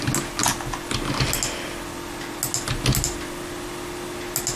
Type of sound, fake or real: real